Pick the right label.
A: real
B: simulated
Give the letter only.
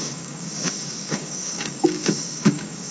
B